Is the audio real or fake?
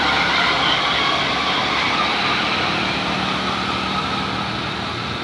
real